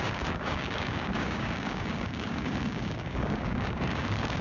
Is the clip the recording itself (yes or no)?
no